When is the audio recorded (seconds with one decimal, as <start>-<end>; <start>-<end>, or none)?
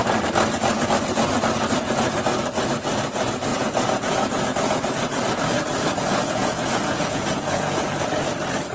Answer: 0.0-3.5; 4.4-6.0; 8.0-8.7